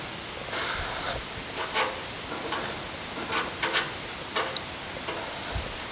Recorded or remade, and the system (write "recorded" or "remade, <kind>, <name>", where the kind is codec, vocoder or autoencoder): recorded